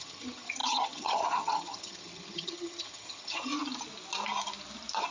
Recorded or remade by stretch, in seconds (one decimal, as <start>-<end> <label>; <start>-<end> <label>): 0.0-3.5 remade; 3.5-5.1 recorded